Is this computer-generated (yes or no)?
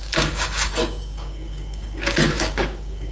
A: yes